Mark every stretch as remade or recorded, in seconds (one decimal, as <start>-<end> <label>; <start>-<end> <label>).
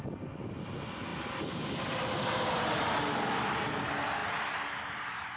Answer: 0.0-5.4 recorded